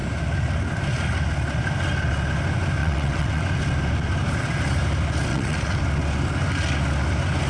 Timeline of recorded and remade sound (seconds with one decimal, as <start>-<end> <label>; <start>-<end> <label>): 0.0-2.8 recorded; 2.8-3.4 remade; 3.4-5.3 recorded; 5.3-5.8 remade; 5.8-7.5 recorded